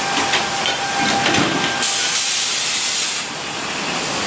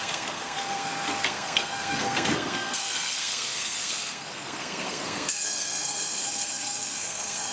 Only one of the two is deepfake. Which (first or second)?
second